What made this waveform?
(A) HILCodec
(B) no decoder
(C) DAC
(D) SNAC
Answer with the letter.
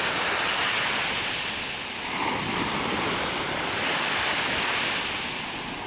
B